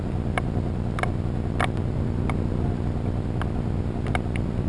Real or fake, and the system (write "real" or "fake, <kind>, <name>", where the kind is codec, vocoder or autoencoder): real